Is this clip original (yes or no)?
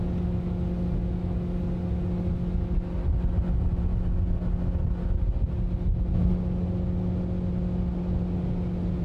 yes